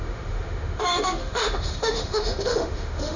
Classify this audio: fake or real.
fake